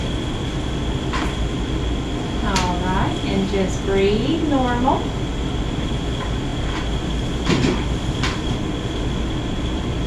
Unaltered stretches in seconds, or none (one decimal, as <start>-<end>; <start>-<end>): 0.0-10.1